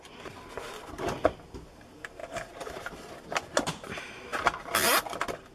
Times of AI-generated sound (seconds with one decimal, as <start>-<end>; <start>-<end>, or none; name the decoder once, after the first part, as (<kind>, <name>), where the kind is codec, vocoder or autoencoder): none